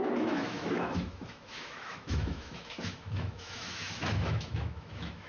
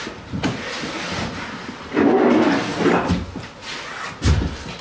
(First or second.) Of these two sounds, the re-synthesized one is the first